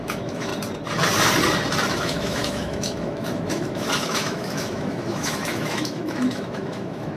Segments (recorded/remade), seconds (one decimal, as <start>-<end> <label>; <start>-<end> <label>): 0.0-0.5 remade; 0.5-1.9 recorded; 1.9-7.2 remade